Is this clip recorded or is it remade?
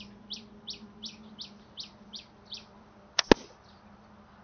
recorded